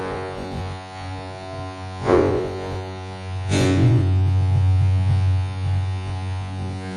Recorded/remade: remade